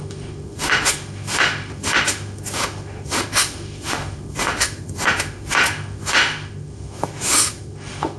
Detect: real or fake fake